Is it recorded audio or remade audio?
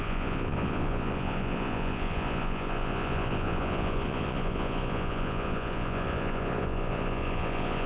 remade